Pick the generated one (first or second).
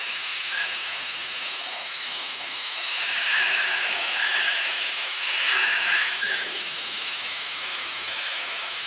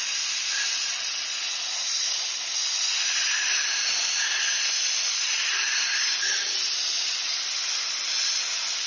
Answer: first